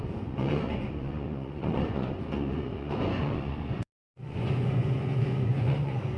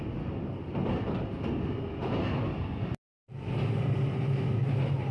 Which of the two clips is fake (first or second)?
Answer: first